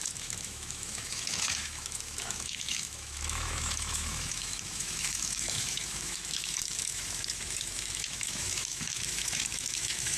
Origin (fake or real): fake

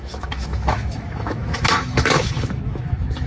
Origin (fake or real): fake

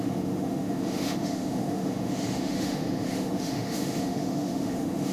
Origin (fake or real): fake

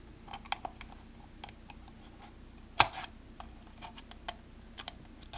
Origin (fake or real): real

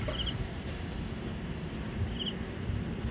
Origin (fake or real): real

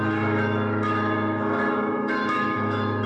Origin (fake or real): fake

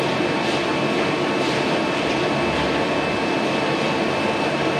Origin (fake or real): real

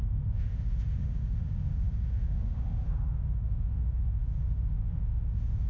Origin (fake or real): fake